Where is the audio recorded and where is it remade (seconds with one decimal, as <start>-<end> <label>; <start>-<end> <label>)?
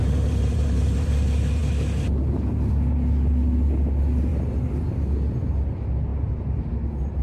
0.0-1.1 remade; 1.1-6.1 recorded; 6.1-6.7 remade; 6.7-7.2 recorded